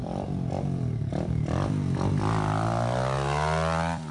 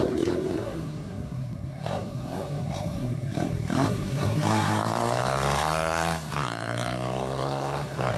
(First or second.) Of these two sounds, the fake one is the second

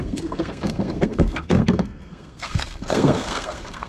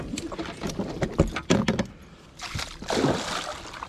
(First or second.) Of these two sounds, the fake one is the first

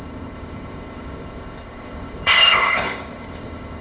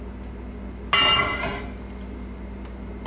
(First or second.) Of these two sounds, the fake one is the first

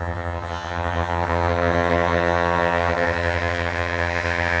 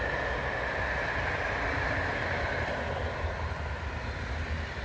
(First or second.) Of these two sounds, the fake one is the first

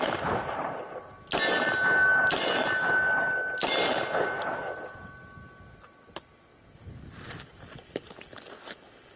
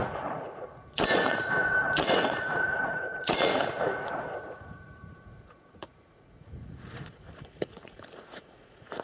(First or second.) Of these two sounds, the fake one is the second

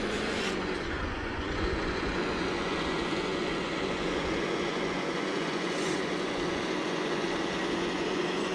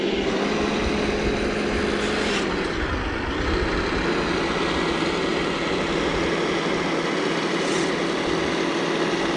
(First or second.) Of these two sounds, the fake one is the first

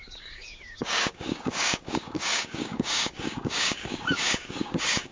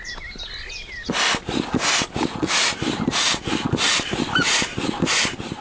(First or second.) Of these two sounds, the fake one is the first